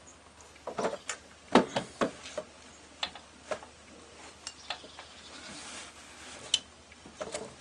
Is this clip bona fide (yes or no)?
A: yes